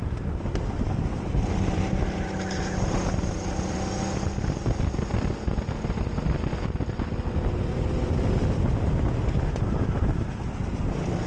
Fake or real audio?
real